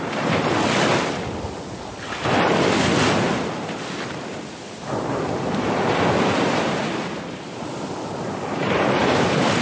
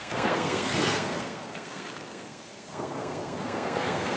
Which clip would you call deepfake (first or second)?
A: second